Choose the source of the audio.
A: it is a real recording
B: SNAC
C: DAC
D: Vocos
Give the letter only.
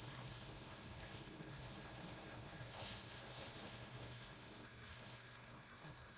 B